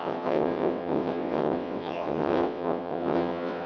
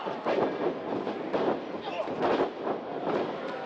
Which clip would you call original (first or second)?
second